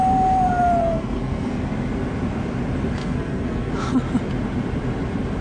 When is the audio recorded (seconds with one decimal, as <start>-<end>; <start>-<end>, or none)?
0.0-0.8; 1.6-3.0; 3.7-5.4